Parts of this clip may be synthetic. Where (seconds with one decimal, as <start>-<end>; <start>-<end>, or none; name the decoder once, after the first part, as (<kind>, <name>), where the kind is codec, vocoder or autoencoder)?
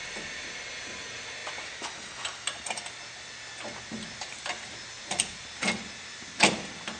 none